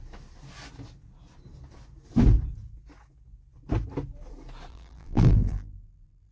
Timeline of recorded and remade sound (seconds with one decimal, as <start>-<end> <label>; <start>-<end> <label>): 0.0-4.7 recorded; 4.7-6.3 remade